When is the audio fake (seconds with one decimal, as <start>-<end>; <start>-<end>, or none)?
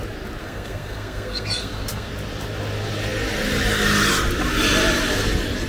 0.4-2.1